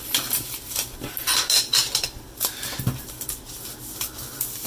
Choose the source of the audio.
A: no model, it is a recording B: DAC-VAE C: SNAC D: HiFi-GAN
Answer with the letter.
A